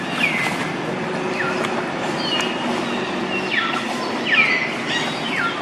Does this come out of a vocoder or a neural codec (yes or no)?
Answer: no